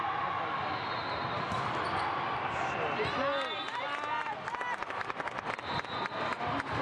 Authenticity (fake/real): real